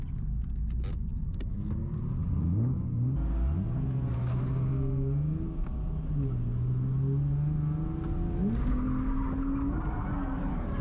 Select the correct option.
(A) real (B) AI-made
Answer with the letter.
A